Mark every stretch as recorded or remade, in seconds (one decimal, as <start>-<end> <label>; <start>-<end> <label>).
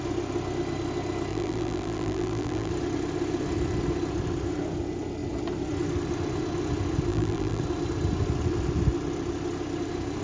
0.0-1.3 recorded; 1.3-2.7 remade; 2.7-7.1 recorded; 7.1-7.6 remade; 7.6-10.2 recorded